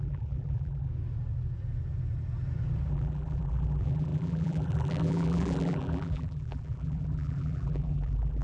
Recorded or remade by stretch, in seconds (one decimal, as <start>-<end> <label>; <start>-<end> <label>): 0.0-0.9 remade; 0.9-2.9 recorded; 2.9-8.4 remade